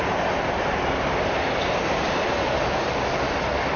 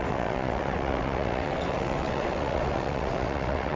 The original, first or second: first